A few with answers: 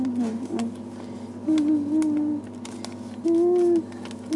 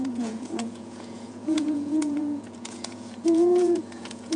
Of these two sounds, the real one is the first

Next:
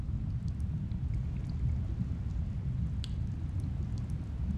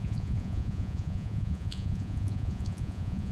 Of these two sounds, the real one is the first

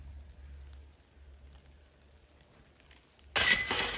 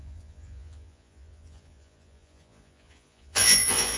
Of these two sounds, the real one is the first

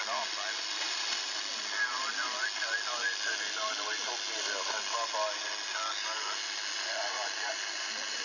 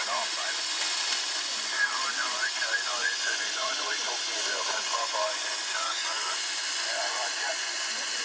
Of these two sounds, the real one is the first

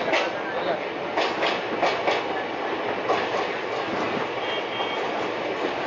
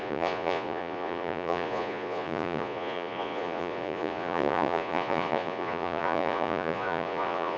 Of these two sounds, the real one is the first